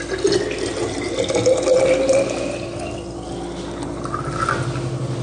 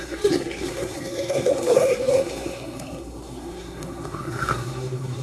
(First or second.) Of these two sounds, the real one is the first